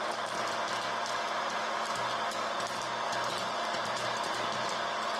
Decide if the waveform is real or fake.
real